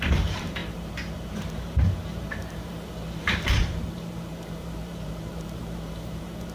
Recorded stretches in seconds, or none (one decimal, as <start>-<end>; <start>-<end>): none